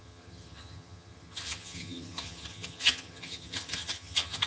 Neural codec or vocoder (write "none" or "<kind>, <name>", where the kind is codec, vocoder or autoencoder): vocoder, HiFi-GAN